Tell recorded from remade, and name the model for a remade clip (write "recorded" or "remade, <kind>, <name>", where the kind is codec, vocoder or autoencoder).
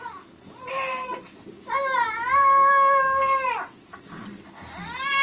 recorded